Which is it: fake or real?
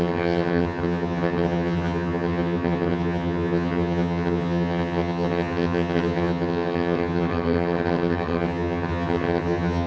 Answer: fake